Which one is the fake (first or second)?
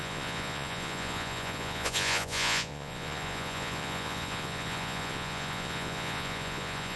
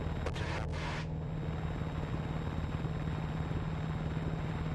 first